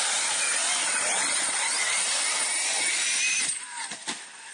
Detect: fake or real fake